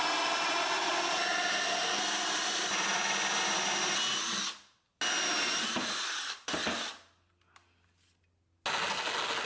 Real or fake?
real